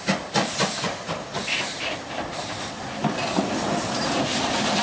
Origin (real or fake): real